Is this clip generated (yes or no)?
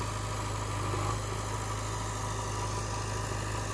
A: no